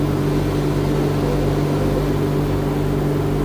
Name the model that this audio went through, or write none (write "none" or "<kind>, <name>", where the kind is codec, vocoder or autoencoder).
none